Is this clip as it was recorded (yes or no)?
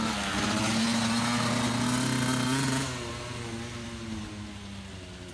yes